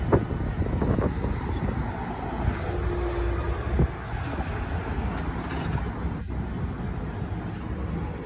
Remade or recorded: recorded